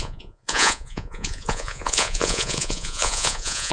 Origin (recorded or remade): remade